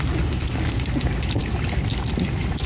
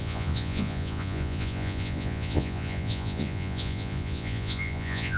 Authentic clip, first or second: first